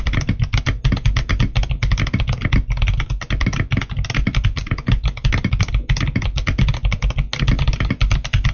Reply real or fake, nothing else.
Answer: real